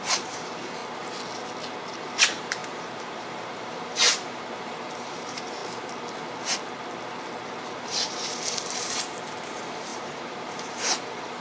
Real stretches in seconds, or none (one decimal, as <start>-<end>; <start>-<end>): 0.8-1.9; 5.6-7.6